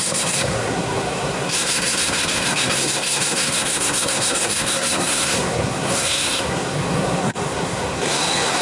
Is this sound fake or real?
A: fake